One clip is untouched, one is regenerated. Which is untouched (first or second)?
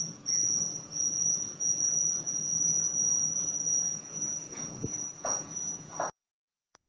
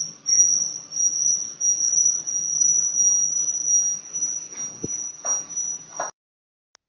second